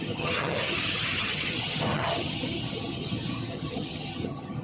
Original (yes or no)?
no